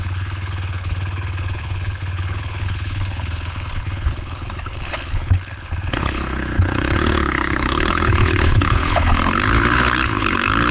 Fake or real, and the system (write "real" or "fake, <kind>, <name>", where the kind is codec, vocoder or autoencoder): fake, codec, HILCodec